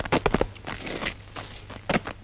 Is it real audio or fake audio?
real